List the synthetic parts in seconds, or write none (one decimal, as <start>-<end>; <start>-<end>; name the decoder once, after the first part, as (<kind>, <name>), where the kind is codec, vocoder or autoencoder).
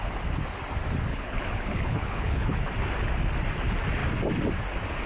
1.1-2.7 (codec, HILCodec)